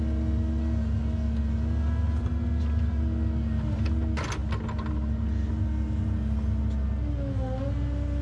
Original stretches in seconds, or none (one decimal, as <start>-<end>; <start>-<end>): 0.0-8.2